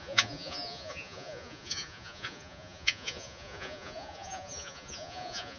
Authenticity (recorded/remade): remade